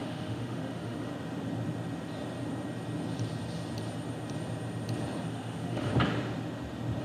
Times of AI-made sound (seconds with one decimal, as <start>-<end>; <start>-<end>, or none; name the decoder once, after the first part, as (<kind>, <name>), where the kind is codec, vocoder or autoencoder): 0.0-1.1 (autoencoder, DAC-VAE); 5.3-5.9